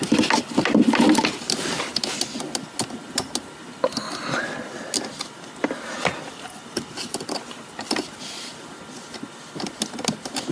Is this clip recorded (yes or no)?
yes